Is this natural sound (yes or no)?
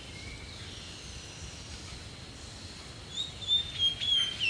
yes